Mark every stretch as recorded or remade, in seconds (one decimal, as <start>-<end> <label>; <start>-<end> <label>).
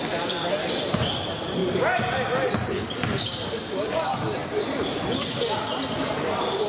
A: 0.0-6.7 recorded